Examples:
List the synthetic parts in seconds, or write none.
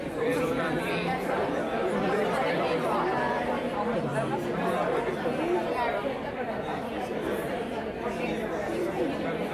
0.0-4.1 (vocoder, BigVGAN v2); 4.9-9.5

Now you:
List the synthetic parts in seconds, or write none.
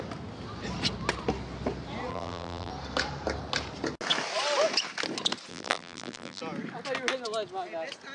2.1-2.7 (vocoder, BigVGAN v2); 5.5-6.4